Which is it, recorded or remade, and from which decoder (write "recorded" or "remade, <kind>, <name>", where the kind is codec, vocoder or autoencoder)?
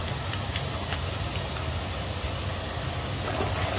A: recorded